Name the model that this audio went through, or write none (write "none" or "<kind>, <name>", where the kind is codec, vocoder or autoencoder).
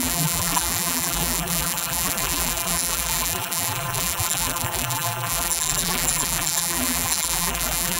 vocoder, BigVGAN v2